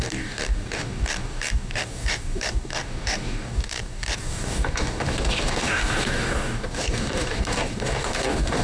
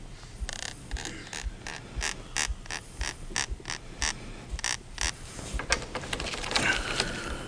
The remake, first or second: first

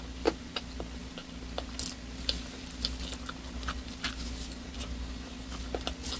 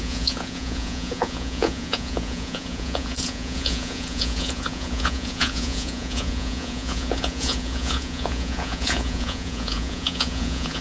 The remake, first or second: second